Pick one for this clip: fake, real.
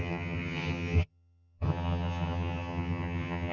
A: fake